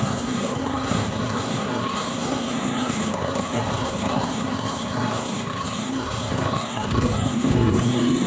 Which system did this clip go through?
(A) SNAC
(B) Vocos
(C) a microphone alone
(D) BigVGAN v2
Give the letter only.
A